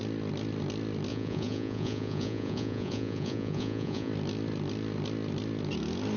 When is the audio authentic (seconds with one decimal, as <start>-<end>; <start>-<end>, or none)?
0.0-1.1; 4.1-6.2